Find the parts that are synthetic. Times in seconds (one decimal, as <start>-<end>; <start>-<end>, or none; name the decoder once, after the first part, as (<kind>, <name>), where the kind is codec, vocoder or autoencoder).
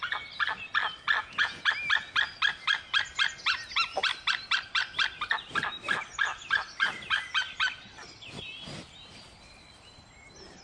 1.2-1.7 (vocoder, Vocos)